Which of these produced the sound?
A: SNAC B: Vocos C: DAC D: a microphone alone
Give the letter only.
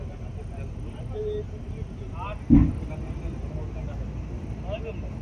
D